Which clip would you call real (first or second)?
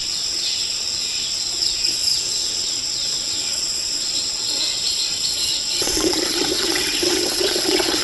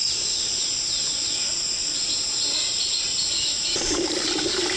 second